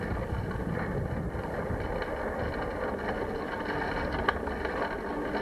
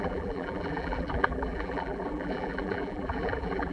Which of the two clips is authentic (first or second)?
first